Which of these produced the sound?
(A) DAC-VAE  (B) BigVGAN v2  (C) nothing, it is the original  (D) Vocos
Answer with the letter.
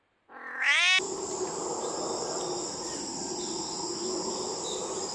C